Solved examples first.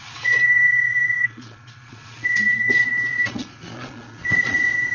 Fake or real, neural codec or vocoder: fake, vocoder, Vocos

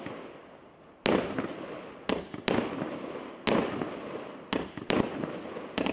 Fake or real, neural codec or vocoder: real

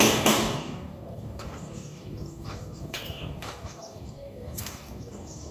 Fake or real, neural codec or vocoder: fake, codec, DAC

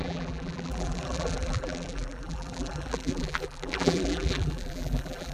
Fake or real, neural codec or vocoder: fake, vocoder, BigVGAN v2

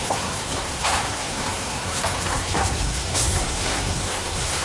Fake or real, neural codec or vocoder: fake, codec, SNAC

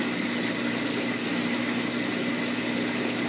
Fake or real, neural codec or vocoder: real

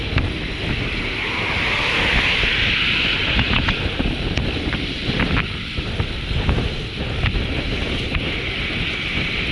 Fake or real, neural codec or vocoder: real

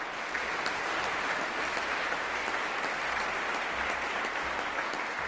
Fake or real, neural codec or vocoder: real